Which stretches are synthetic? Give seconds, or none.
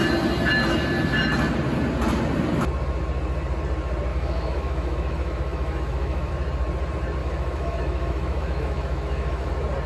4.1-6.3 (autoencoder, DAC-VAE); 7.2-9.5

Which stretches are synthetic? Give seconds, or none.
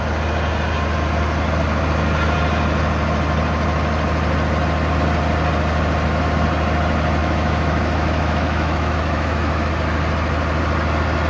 7.2-9.7 (autoencoder, DAC-VAE)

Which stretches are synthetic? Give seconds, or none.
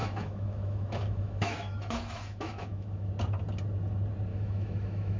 0.0-3.1 (autoencoder, DAC-VAE); 4.3-5.2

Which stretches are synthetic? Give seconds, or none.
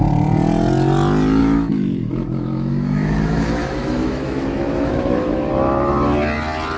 1.4-5.5 (autoencoder, DAC-VAE)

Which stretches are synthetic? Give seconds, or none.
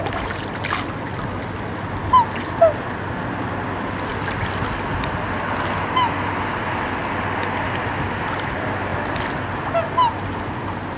none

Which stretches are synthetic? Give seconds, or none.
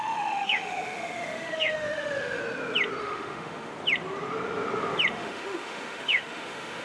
0.0-2.4 (autoencoder, DAC-VAE); 3.0-3.7; 5.1-6.8